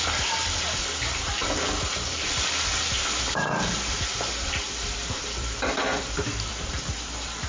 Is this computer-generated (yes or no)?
yes